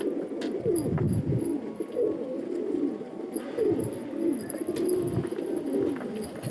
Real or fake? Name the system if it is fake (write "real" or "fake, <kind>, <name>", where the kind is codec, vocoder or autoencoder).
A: real